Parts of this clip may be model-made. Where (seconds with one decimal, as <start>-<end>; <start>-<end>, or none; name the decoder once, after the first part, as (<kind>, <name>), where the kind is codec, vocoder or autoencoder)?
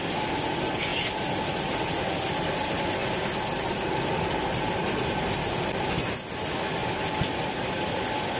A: none